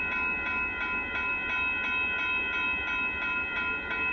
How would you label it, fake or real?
real